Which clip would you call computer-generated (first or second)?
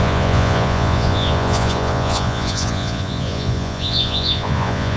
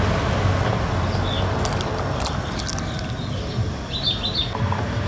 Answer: first